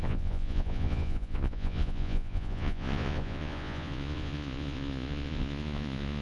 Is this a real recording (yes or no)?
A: no